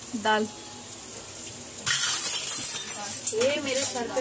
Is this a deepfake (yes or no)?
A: no